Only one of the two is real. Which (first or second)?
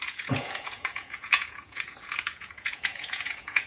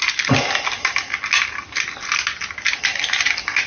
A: second